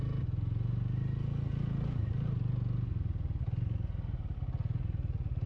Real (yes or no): yes